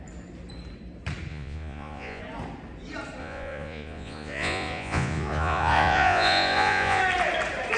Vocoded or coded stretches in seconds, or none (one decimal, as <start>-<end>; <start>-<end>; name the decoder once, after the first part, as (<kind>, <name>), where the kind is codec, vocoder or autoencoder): 1.3-2.2 (vocoder, Vocos); 3.2-7.0

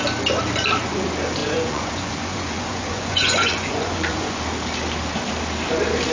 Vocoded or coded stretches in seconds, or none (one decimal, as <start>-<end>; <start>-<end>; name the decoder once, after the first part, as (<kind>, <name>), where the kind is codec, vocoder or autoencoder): 1.4-4.4 (vocoder, Vocos)